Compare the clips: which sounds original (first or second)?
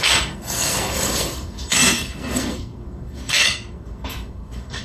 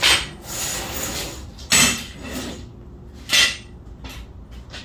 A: second